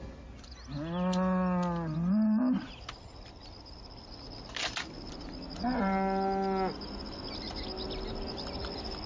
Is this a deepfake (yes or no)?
no